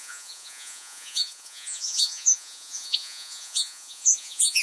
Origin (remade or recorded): remade